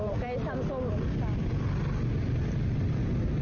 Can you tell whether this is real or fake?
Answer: real